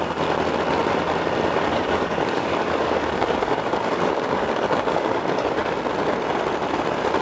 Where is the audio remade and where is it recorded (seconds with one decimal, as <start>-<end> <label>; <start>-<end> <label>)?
0.0-1.7 recorded; 1.7-5.8 remade; 5.8-7.2 recorded